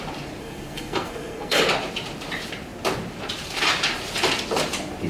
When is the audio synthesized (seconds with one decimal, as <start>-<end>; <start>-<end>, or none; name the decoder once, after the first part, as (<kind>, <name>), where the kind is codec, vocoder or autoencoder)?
0.4-1.6 (codec, SNAC)